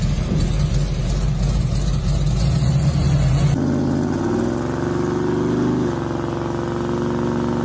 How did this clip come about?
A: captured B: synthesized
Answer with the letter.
A